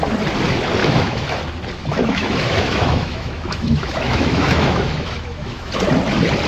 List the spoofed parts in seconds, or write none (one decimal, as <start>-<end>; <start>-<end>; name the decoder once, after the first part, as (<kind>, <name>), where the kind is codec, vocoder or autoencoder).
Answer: 0.8-1.4 (autoencoder, DAC-VAE); 1.8-5.7